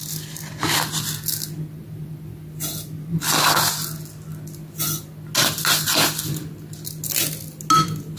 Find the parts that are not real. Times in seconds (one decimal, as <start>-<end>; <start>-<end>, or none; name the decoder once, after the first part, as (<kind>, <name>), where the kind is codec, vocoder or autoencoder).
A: none